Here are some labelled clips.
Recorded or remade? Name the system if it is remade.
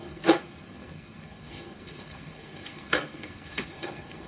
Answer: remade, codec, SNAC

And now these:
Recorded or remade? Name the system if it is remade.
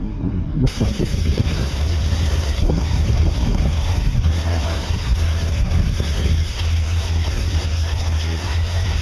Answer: remade, codec, SNAC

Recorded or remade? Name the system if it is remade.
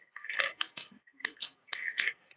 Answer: remade, codec, SNAC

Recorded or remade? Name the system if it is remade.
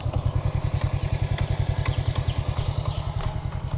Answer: recorded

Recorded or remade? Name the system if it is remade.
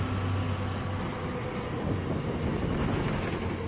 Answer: recorded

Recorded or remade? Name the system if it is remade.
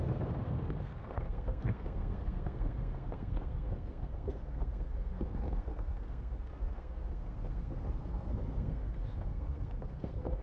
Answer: remade, codec, SNAC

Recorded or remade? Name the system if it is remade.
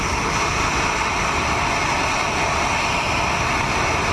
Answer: recorded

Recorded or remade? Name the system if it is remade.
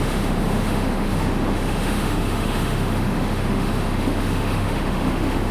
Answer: remade, autoencoder, DAC-VAE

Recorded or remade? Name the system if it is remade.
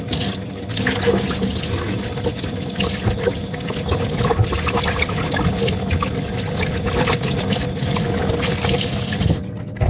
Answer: recorded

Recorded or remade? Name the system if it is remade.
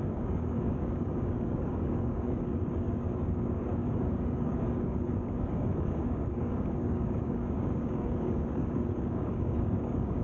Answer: remade, codec, DAC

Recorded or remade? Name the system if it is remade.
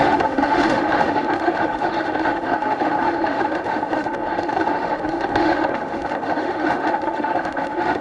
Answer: remade, autoencoder, DAC-VAE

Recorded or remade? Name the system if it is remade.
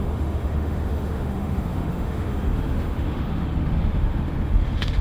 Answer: remade, autoencoder, DAC-VAE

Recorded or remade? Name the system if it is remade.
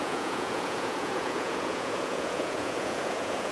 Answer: remade, vocoder, Vocos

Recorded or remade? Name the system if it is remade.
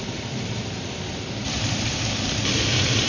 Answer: remade, vocoder, BigVGAN v2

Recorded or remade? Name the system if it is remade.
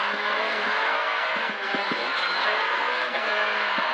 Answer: remade, codec, SNAC